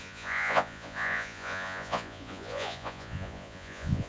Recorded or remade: remade